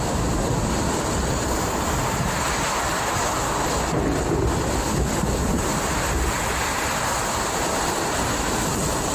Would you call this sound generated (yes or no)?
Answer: no